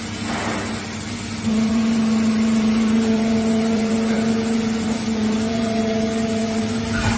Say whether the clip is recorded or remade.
remade